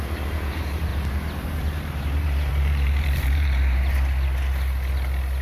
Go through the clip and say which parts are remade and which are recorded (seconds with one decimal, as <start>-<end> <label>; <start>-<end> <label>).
0.0-0.9 recorded; 0.9-3.8 remade; 3.8-5.4 recorded